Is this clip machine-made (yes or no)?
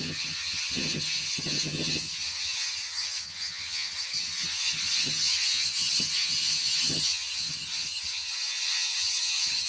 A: yes